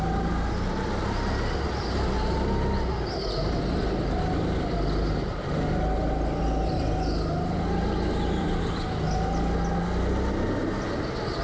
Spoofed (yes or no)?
no